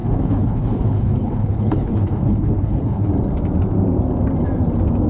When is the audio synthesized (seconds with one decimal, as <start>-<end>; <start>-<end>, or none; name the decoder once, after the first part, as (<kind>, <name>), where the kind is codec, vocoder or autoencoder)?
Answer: 0.0-3.1 (codec, HILCodec)